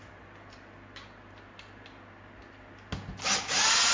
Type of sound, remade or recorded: recorded